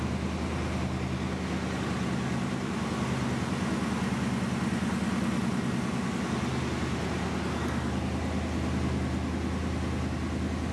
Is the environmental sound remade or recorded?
recorded